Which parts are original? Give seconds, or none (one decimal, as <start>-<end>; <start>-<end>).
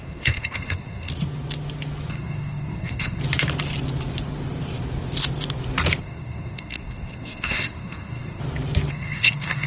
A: 1.1-2.1; 3.2-6.0; 8.4-8.9